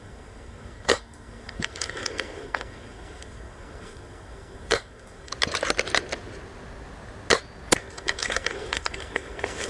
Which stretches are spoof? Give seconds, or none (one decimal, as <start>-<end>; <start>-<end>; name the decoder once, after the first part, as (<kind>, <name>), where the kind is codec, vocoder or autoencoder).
0.0-5.3 (codec, SNAC); 7.8-9.7